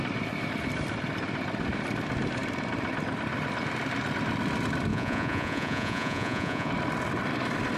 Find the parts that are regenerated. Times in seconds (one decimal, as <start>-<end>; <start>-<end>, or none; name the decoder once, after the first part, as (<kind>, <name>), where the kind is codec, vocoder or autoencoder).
4.9-6.7 (vocoder, Vocos)